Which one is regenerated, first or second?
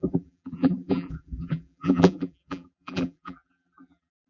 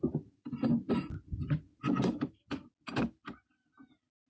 first